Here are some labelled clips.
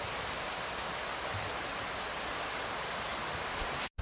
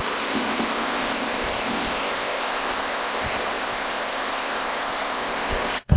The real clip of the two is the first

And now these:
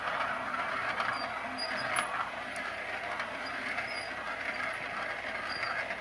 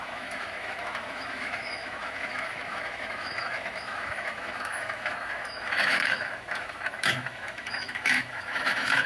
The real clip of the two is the first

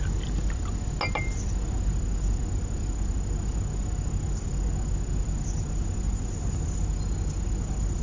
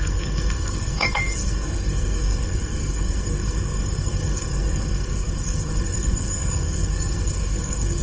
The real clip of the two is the first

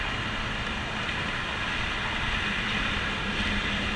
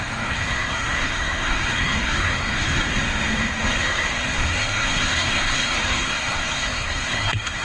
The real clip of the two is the first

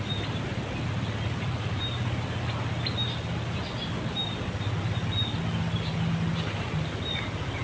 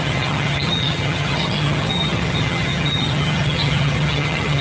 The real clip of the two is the first